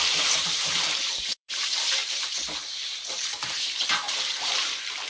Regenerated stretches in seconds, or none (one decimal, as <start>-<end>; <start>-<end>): 0.0-5.1